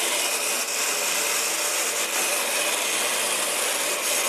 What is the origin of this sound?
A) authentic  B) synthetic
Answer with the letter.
A